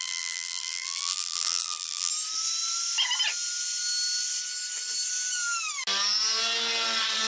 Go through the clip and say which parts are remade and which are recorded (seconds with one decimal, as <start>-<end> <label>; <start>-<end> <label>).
0.0-2.1 remade; 2.1-7.3 recorded